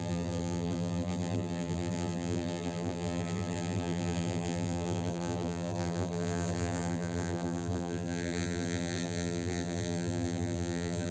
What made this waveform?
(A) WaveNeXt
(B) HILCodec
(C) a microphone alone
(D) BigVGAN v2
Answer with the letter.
D